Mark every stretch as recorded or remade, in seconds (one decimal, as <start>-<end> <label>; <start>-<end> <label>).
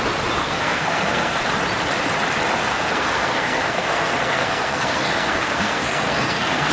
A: 0.0-0.4 recorded; 0.4-1.4 remade; 1.4-2.7 recorded; 2.7-6.7 remade